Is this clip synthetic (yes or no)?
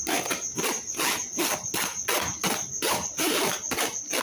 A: no